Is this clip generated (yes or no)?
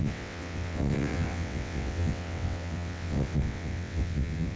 yes